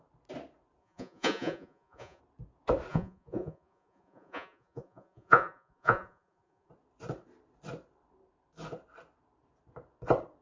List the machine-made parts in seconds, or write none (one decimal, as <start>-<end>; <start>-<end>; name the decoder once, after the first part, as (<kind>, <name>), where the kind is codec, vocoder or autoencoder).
0.8-2.2 (vocoder, Vocos); 2.9-6.7